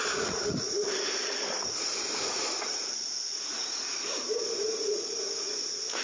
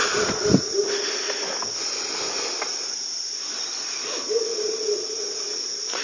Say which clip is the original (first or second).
second